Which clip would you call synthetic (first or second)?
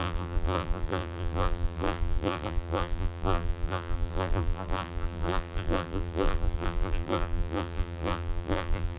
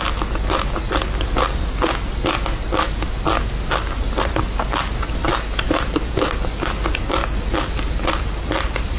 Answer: first